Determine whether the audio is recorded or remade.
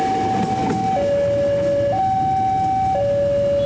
recorded